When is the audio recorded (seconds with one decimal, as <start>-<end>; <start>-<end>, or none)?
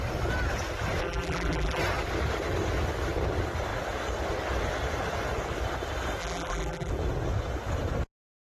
0.0-1.0; 1.8-6.2; 6.9-8.5